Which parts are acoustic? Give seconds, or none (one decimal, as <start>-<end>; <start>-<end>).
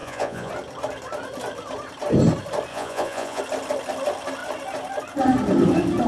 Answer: 0.5-2.7; 3.4-6.1